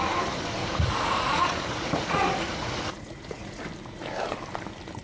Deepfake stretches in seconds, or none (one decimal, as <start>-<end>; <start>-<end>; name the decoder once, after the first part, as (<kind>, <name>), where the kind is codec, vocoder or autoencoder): 0.6-3.6 (vocoder, Vocos)